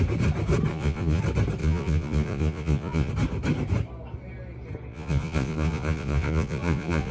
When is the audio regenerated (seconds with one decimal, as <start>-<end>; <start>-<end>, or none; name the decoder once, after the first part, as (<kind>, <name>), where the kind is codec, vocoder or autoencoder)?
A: 0.7-1.2 (vocoder, Vocos); 1.6-3.1; 4.9-7.1